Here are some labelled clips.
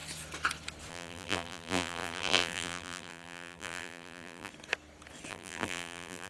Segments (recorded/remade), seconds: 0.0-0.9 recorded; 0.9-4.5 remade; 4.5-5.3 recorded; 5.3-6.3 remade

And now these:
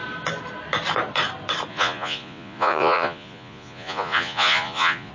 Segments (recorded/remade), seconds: 0.0-1.7 recorded; 1.7-5.1 remade

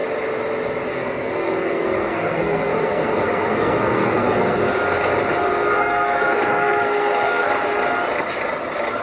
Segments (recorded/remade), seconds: 0.0-0.9 recorded; 0.9-4.6 remade; 4.6-5.8 recorded; 5.8-7.5 remade; 7.5-9.0 recorded

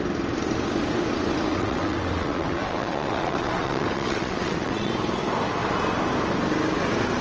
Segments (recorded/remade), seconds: 0.0-1.5 recorded; 1.5-4.9 remade; 4.9-7.2 recorded

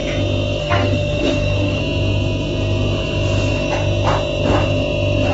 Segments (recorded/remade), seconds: 0.0-0.6 recorded; 0.6-1.8 remade; 1.8-5.3 recorded